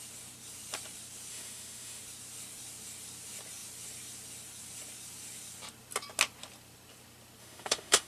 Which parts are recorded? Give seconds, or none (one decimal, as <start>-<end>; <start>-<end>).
0.0-1.3; 2.0-7.4

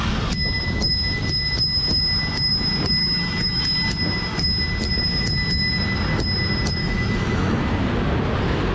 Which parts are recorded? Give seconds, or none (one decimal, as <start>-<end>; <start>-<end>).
0.0-3.0; 3.6-6.8; 7.6-8.7

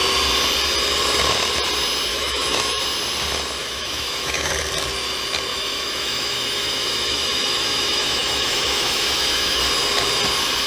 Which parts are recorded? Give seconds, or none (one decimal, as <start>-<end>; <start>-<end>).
0.0-2.1; 2.8-3.6; 4.5-5.5; 9.6-10.7

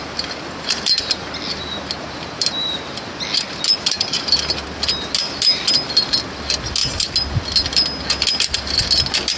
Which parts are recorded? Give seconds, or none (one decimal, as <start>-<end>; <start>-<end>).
0.0-9.4

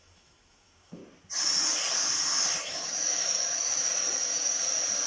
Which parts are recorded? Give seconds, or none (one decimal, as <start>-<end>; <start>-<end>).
1.0-2.6; 3.8-5.1